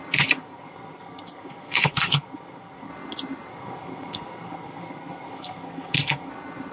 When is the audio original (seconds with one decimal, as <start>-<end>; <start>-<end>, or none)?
0.0-0.4; 2.9-3.5; 6.3-6.7